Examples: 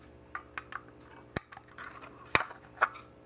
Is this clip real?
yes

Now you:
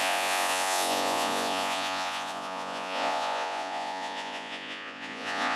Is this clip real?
no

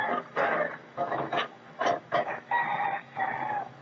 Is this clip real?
no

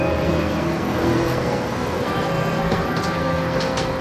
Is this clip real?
no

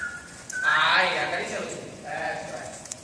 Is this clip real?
no